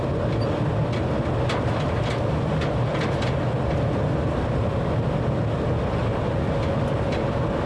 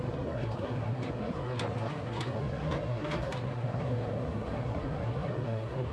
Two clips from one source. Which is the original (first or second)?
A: first